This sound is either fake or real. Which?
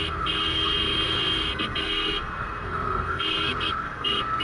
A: fake